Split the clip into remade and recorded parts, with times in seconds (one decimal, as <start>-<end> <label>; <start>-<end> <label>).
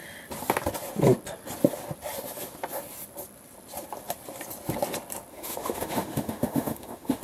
0.0-5.3 recorded; 5.3-7.2 remade